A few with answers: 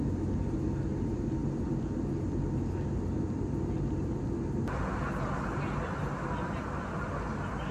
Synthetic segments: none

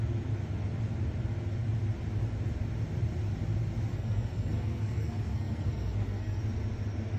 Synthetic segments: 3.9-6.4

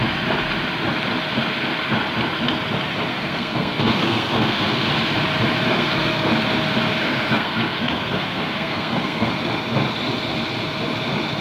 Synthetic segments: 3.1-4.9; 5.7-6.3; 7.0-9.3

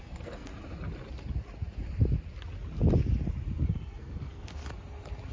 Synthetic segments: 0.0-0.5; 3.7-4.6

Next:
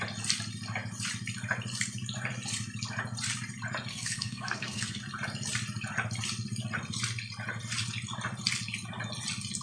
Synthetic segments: 3.9-5.0